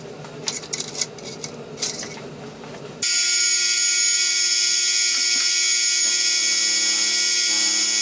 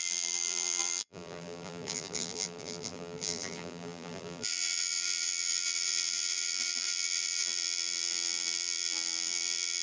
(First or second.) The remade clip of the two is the second